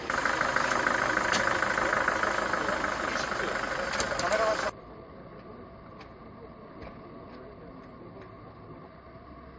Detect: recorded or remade recorded